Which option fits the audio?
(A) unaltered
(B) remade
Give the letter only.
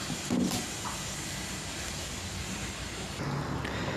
A